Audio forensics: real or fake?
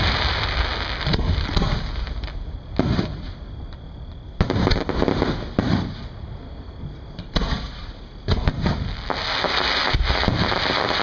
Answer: real